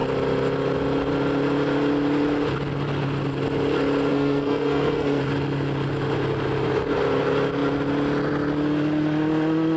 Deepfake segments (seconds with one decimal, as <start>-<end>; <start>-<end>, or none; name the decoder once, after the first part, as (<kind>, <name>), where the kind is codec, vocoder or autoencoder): 4.1-5.2 (codec, SNAC)